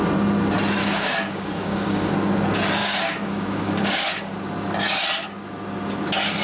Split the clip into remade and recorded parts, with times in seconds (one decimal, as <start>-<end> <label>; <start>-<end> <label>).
0.0-0.8 recorded; 0.8-2.1 remade; 2.1-2.8 recorded; 2.8-4.3 remade; 4.3-6.4 recorded